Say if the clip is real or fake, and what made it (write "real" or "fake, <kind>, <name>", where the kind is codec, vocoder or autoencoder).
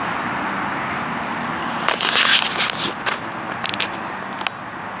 real